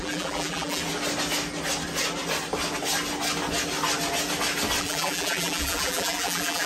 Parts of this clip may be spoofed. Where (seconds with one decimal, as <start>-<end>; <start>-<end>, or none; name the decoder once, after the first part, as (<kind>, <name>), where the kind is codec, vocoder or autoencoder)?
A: 0.0-0.8 (vocoder, BigVGAN v2); 4.8-6.7